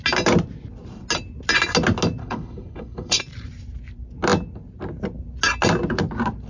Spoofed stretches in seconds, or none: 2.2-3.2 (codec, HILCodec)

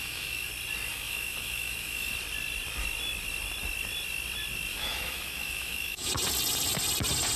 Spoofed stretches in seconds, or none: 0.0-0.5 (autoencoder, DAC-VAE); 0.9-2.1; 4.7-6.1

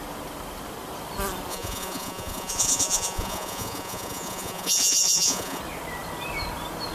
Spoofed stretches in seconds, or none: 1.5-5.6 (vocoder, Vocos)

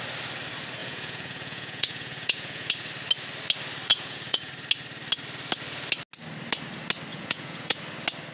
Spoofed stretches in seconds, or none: 0.8-2.7 (vocoder, Vocos); 3.9-4.5; 7.1-7.8